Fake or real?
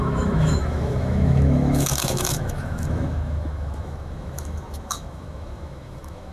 fake